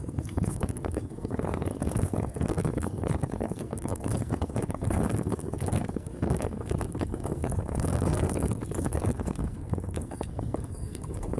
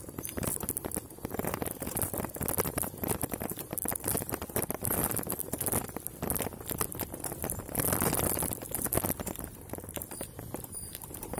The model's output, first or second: first